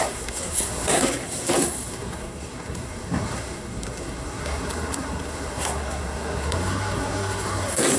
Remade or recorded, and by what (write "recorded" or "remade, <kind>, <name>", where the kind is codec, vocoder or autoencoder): remade, codec, SNAC